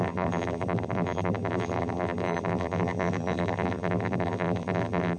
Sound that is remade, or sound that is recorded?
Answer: remade